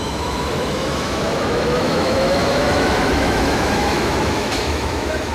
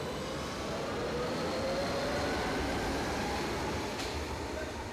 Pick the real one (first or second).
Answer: second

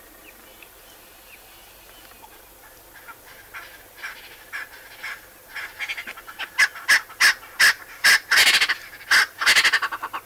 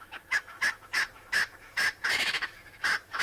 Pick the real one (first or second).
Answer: first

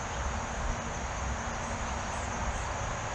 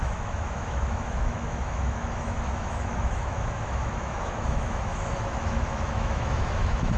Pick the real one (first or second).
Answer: first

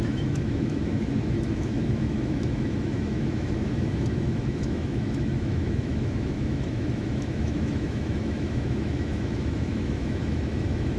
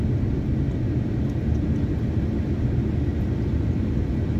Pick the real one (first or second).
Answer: second